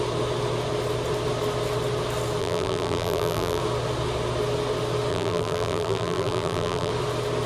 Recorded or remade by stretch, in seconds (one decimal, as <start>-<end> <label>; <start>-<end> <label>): 0.0-2.4 recorded; 2.4-3.6 remade; 3.6-5.1 recorded; 5.1-6.9 remade; 6.9-7.5 recorded